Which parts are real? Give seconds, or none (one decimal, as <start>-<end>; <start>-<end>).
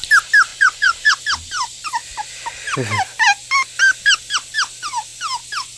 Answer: 0.0-0.5; 1.2-5.8